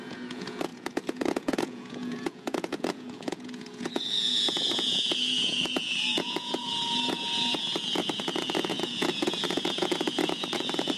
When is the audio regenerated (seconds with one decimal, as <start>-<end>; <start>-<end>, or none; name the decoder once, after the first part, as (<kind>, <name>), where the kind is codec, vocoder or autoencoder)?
0.0-11.0 (vocoder, Vocos)

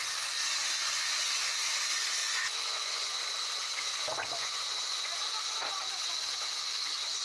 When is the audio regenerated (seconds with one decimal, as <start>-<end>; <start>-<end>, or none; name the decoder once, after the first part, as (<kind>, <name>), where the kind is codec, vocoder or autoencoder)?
2.2-3.2 (vocoder, Vocos); 3.9-5.2

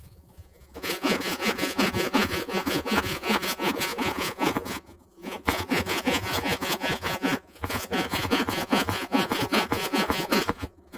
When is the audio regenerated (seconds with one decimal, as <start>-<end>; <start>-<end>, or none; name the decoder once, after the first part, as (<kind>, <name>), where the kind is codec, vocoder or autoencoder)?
0.0-11.0 (vocoder, Vocos)

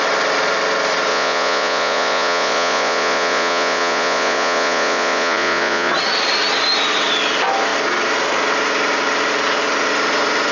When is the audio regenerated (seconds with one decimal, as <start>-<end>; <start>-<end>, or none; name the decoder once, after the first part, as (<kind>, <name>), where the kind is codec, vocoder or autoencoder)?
1.1-5.9 (vocoder, Vocos)

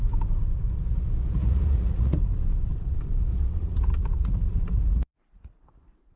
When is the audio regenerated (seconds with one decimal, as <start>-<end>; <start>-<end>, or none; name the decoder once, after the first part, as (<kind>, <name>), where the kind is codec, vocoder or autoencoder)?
1.4-2.2 (vocoder, Vocos); 3.3-5.1

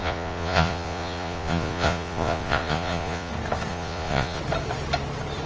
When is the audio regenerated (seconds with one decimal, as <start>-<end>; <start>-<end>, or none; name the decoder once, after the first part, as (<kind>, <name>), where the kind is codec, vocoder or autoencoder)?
0.0-3.3 (vocoder, Vocos); 3.7-4.4

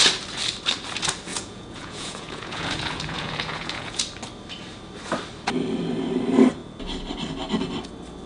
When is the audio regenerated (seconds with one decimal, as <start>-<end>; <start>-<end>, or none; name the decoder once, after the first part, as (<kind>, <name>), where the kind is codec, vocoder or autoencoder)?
1.3-4.0 (vocoder, Vocos)